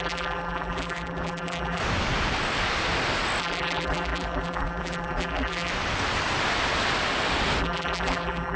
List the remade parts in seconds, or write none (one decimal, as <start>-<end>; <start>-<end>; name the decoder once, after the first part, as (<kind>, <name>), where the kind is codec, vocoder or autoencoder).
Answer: 0.0-1.8 (vocoder, BigVGAN v2); 3.4-5.7; 7.6-8.6

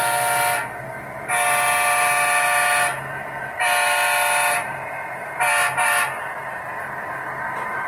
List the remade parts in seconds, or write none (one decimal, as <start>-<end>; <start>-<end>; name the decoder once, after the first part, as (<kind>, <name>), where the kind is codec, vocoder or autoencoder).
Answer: none

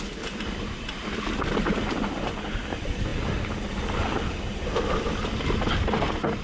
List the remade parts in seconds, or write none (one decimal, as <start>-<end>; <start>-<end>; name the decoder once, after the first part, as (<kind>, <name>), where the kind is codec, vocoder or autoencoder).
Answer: none

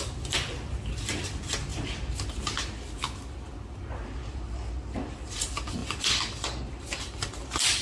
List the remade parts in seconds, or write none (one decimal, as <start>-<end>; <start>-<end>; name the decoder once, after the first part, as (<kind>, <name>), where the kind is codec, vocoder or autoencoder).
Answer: 0.0-1.7 (vocoder, BigVGAN v2); 5.1-7.8

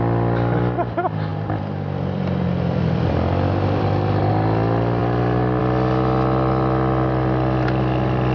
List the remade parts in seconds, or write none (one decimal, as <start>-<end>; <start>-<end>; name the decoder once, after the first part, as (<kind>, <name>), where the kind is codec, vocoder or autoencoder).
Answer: 1.3-4.3 (vocoder, BigVGAN v2)

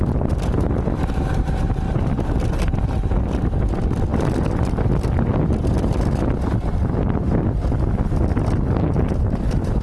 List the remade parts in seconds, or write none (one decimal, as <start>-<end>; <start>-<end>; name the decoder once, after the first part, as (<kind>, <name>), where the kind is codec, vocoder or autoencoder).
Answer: none

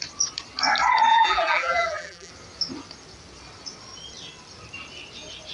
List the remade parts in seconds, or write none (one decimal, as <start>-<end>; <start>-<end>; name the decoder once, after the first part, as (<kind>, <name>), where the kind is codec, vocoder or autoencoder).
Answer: 1.1-2.3 (vocoder, BigVGAN v2)

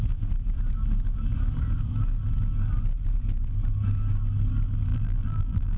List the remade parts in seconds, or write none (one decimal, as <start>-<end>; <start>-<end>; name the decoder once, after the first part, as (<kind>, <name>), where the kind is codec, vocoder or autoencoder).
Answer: 4.9-5.8 (vocoder, BigVGAN v2)